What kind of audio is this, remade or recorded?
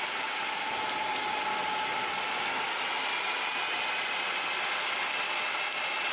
recorded